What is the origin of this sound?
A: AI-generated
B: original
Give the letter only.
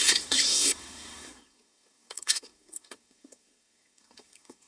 A